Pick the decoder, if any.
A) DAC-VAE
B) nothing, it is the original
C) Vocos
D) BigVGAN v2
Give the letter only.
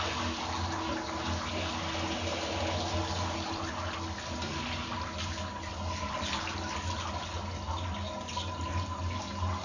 B